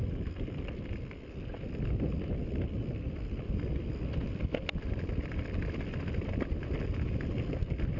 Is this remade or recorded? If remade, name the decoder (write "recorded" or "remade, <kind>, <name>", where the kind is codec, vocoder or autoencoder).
recorded